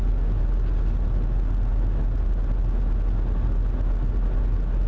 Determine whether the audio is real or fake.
real